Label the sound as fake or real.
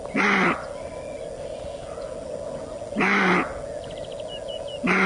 real